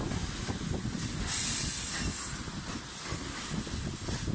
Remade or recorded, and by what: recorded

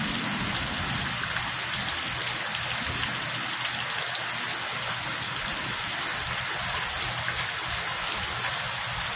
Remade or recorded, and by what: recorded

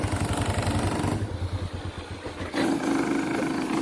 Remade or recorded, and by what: recorded